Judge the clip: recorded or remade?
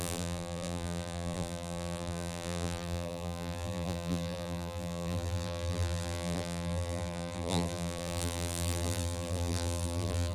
remade